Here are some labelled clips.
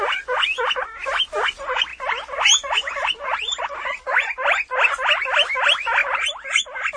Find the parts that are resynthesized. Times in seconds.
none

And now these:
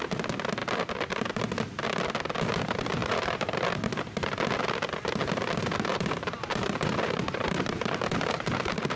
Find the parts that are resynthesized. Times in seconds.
3.0-4.2 (vocoder, BigVGAN v2); 5.9-9.0

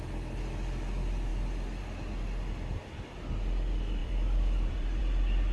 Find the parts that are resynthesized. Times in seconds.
4.0-5.0 (vocoder, BigVGAN v2)